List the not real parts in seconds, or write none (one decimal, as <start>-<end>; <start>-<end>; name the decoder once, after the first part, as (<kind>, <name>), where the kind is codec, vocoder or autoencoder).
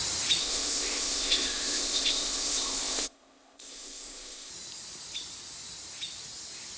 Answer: 0.4-4.5 (codec, ZipCodec)